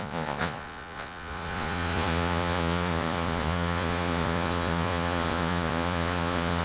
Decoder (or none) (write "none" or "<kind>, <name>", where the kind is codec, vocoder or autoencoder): vocoder, Vocos